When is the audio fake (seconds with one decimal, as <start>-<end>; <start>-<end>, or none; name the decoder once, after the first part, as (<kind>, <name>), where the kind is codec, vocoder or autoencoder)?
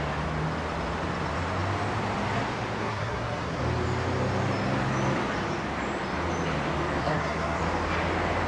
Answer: 2.8-3.6 (codec, SNAC); 7.0-7.6